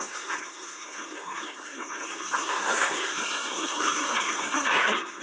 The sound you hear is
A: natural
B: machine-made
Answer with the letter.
B